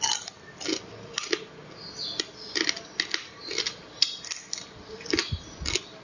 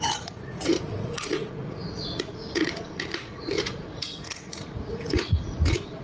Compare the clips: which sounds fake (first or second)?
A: second